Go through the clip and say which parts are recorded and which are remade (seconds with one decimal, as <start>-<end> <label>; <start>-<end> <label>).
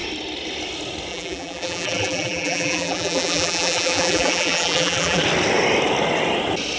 0.0-1.1 recorded; 1.1-5.2 remade; 5.2-6.8 recorded